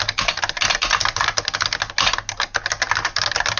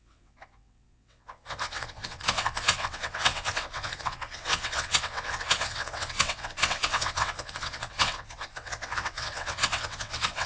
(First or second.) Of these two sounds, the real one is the first